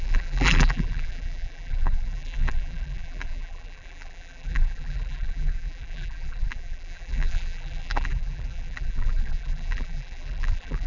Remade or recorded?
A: remade